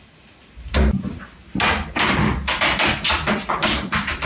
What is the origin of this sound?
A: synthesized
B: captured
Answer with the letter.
B